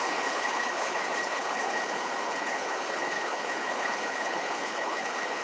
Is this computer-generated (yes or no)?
yes